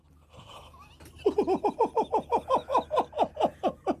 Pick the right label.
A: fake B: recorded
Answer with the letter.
B